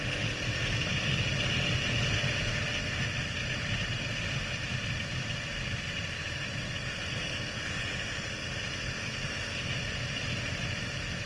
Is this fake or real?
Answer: real